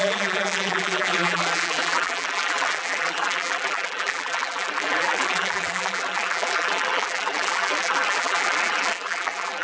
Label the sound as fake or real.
fake